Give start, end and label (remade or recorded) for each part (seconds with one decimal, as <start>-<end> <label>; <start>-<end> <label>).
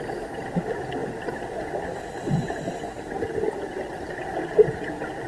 0.0-5.3 recorded